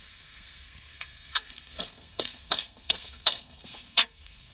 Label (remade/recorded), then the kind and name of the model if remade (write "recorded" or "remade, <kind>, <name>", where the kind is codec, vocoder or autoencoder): remade, codec, SNAC